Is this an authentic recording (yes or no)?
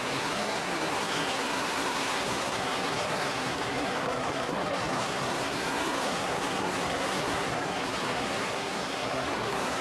no